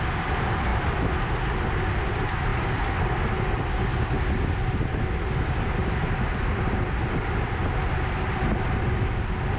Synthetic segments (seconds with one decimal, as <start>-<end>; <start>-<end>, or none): none